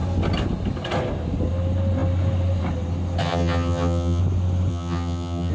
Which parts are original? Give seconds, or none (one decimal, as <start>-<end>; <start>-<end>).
0.0-3.2; 4.2-4.7

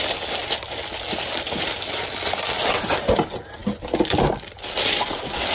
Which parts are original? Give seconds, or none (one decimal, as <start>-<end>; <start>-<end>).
0.0-5.5

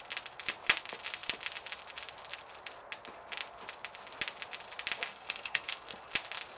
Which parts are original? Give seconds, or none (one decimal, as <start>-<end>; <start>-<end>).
0.0-5.1; 6.1-6.6

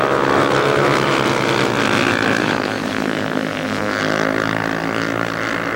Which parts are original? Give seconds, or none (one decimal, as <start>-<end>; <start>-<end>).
0.0-2.4; 4.0-5.8

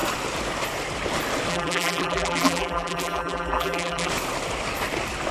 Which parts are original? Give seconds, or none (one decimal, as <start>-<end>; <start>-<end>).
0.0-1.5; 4.1-5.3